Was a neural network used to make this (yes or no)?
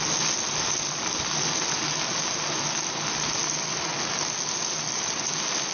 no